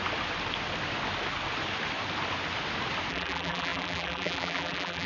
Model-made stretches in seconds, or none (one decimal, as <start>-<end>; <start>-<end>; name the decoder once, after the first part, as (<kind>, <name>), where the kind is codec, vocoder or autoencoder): 3.1-5.1 (vocoder, BigVGAN v2)